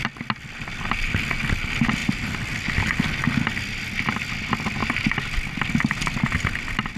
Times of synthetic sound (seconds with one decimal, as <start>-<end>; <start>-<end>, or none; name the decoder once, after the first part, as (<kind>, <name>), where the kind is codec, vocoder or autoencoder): 2.0-2.7 (vocoder, BigVGAN v2); 4.8-5.7

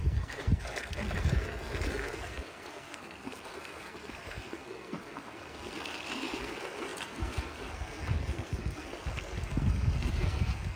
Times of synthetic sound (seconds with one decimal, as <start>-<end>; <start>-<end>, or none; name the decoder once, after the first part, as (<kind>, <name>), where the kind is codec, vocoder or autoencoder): 0.0-10.8 (codec, SNAC)

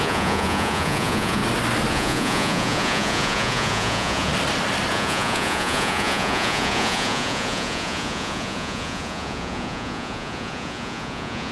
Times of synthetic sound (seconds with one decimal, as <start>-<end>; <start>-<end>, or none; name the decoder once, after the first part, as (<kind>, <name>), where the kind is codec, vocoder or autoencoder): 0.0-1.4 (vocoder, Vocos); 1.9-4.3; 4.9-11.5